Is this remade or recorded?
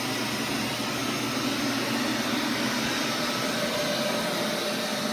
recorded